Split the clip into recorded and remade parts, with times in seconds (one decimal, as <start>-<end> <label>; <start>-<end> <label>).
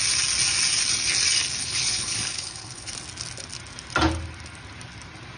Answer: 0.0-1.6 recorded; 1.6-2.9 remade; 2.9-5.4 recorded